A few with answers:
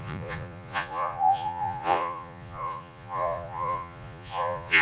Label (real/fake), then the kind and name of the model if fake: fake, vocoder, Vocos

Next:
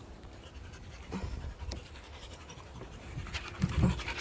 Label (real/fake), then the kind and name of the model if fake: real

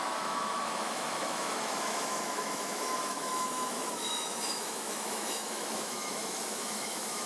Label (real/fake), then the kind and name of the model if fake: fake, autoencoder, DAC-VAE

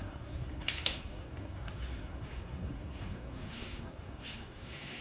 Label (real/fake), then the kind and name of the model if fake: fake, codec, SNAC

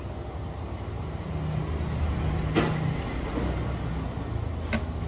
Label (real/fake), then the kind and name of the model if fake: real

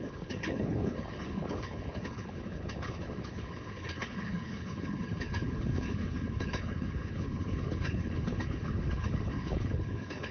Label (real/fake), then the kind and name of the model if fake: fake, codec, HILCodec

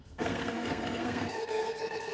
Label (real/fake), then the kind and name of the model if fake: fake, codec, SNAC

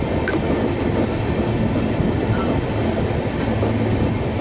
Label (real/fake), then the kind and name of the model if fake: real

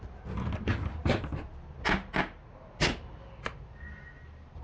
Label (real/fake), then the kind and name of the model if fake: real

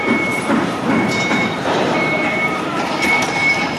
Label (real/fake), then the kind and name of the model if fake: fake, vocoder, BigVGAN v2